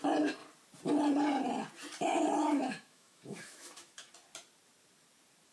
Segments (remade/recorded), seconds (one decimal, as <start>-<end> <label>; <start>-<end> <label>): 0.0-2.4 recorded; 2.4-4.1 remade; 4.1-5.5 recorded